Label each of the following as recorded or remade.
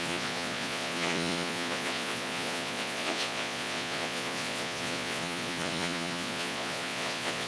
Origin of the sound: remade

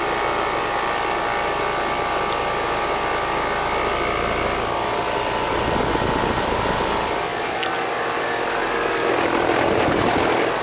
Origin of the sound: recorded